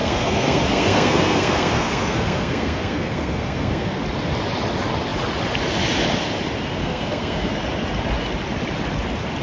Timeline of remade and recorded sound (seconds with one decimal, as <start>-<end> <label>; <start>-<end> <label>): 0.0-4.0 remade; 4.0-6.8 recorded; 6.8-7.5 remade; 7.5-9.4 recorded